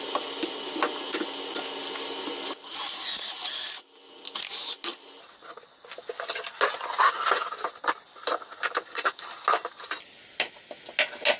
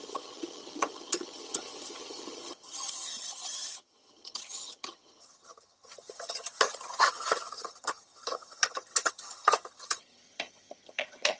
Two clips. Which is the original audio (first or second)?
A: first